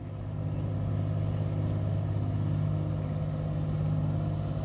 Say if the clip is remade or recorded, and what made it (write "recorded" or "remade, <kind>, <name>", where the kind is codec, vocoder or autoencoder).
recorded